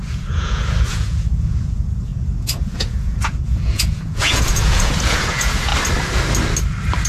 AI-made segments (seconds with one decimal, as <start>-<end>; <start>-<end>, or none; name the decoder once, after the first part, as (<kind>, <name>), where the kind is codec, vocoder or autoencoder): 0.0-5.7 (vocoder, Vocos)